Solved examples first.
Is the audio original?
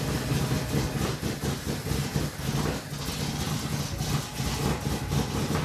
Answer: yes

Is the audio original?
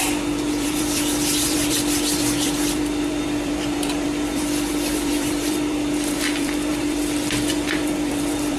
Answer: no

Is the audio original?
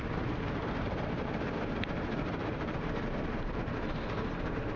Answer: no